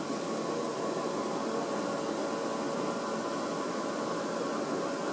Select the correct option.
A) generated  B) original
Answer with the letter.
B